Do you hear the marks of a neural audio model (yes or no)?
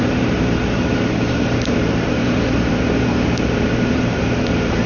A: yes